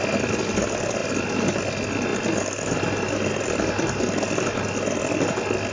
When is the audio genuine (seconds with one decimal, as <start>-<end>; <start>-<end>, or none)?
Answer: 0.0-5.7

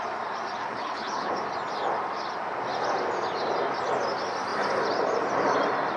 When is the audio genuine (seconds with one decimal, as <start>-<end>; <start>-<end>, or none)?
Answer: 0.0-0.6; 1.3-6.0